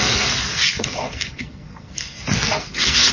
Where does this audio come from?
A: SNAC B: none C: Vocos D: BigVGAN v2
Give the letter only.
A